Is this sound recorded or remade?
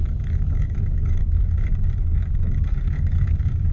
remade